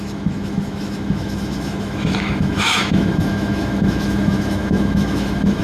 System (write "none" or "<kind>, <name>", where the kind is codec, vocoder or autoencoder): autoencoder, DAC-VAE